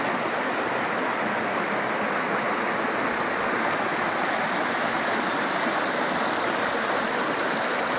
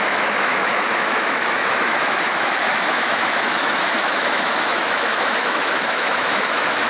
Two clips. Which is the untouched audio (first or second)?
first